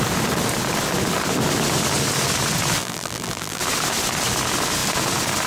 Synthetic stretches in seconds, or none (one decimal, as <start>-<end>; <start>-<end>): 2.8-3.6